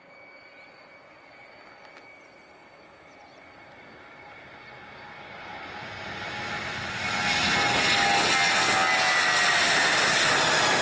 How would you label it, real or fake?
real